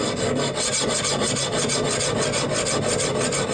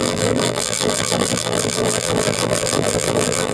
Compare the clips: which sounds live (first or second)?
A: first